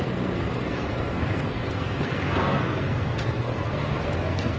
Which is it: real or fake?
fake